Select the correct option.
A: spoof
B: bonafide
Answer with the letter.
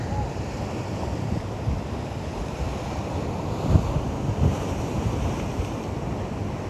A